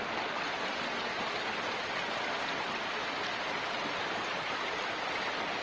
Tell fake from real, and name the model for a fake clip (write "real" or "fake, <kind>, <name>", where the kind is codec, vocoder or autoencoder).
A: real